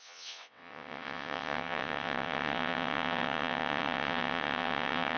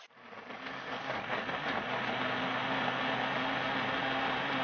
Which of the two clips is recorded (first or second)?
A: second